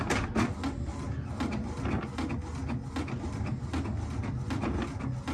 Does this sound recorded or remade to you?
recorded